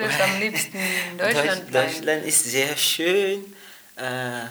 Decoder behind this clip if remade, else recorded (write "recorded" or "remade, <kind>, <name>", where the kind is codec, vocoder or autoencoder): recorded